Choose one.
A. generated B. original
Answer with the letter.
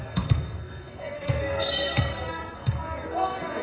A